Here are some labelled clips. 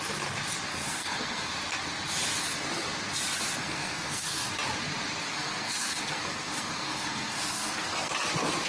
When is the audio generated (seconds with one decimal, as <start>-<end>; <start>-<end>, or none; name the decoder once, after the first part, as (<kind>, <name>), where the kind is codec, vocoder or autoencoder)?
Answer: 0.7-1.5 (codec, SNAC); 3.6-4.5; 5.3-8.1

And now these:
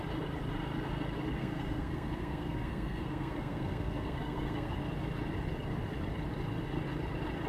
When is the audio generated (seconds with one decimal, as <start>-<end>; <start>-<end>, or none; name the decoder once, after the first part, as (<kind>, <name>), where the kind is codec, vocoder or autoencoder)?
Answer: 1.4-4.7 (codec, SNAC)

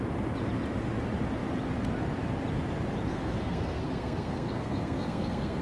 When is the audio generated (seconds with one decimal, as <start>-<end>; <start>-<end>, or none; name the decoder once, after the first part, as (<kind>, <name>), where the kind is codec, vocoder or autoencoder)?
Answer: 3.1-5.6 (codec, SNAC)